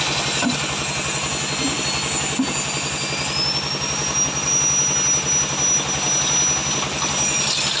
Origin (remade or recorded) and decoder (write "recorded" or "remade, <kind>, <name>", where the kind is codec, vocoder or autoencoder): recorded